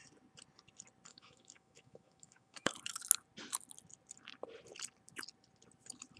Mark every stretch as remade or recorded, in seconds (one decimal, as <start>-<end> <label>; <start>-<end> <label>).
0.0-1.1 recorded; 1.1-2.8 remade; 2.8-6.2 recorded